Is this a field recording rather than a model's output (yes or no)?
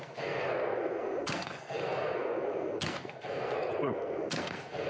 no